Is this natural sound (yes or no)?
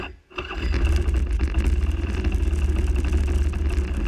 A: yes